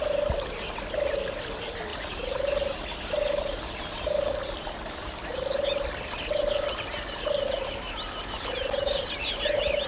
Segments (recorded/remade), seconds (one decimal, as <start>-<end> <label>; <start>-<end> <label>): 0.0-1.9 recorded; 1.9-2.6 remade; 2.6-9.9 recorded